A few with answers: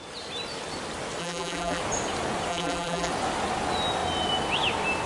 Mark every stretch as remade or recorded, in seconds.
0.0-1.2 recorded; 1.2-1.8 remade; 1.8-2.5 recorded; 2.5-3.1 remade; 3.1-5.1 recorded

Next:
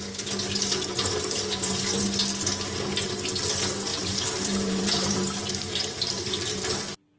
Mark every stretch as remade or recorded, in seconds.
0.0-3.9 recorded; 3.9-6.7 remade; 6.7-7.2 recorded

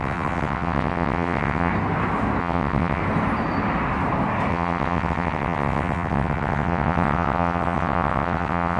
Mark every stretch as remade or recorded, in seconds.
0.0-1.7 remade; 1.7-2.4 recorded; 2.4-3.0 remade; 3.0-4.5 recorded; 4.5-8.8 remade

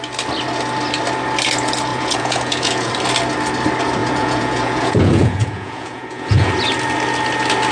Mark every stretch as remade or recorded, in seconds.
0.0-1.9 recorded; 1.9-2.9 remade; 2.9-4.0 recorded; 4.0-6.5 remade; 6.5-7.7 recorded

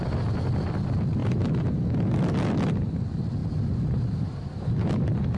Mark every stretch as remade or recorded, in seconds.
0.0-1.2 recorded; 1.2-3.0 remade; 3.0-3.4 recorded; 3.4-4.9 remade; 4.9-5.4 recorded

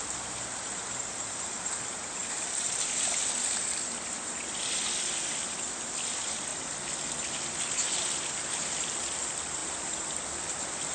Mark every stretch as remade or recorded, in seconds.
0.0-2.2 recorded; 2.2-3.1 remade; 3.1-10.9 recorded